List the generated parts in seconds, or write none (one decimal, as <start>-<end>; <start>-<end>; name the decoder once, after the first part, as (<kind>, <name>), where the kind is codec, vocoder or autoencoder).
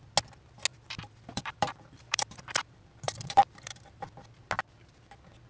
0.7-4.0 (vocoder, BigVGAN v2)